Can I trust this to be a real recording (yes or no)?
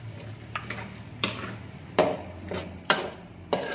no